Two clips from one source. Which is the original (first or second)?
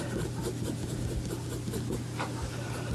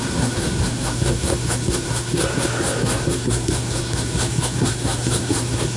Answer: first